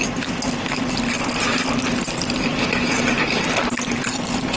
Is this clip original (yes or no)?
yes